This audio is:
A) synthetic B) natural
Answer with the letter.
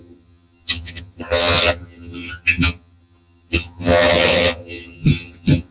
A